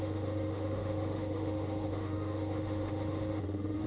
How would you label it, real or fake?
fake